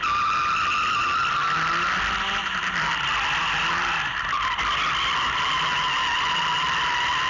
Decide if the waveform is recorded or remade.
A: recorded